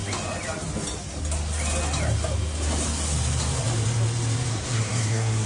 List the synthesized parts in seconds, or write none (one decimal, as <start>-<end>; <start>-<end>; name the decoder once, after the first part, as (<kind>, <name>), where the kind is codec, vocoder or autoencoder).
4.5-5.5 (codec, SNAC)